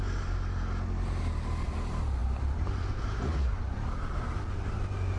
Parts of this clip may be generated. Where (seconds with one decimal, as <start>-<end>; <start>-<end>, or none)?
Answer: 2.2-3.0